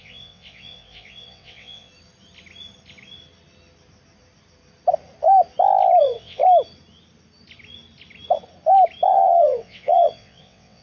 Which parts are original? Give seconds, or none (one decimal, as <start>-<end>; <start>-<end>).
1.9-6.0; 6.4-9.1

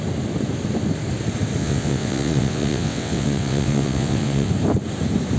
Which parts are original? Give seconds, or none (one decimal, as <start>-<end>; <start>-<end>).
0.0-1.6; 4.5-5.4

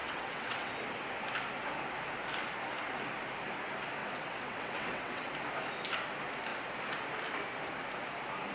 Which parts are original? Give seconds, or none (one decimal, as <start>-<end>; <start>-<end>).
0.7-4.0; 5.3-8.5

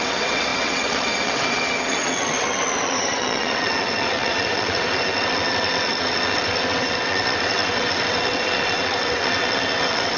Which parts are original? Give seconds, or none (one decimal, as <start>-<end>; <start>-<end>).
none

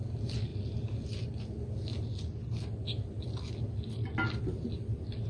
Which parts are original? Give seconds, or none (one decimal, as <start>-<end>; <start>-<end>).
0.0-5.3

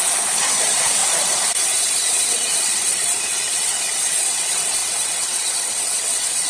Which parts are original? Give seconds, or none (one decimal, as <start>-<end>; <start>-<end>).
0.0-0.6; 1.0-2.1

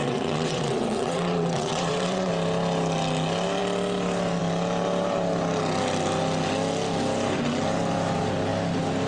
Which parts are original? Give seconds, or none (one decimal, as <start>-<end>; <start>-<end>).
2.3-9.1

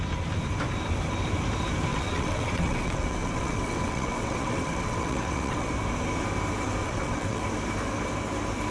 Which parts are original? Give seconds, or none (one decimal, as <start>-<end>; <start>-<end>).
0.0-1.9; 5.7-6.8; 7.4-8.7